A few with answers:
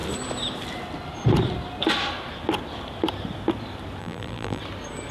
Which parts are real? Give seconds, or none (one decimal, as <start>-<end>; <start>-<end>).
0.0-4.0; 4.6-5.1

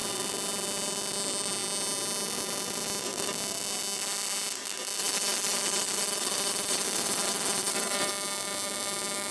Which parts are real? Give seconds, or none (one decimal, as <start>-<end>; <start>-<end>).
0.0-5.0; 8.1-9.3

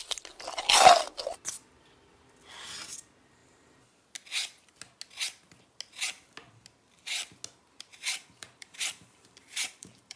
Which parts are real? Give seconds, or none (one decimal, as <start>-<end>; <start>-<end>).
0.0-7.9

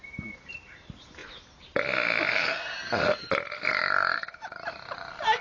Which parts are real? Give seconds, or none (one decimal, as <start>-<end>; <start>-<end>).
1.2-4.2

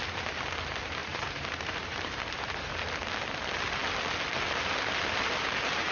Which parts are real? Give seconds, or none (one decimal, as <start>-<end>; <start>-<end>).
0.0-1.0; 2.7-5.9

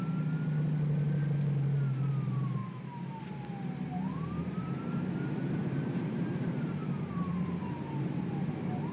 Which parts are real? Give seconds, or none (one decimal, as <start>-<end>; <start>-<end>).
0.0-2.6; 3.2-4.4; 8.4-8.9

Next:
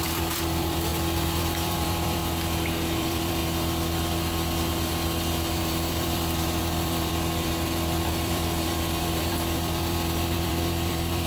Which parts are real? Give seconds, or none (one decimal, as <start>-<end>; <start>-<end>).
0.9-1.4; 2.2-3.0; 3.4-5.6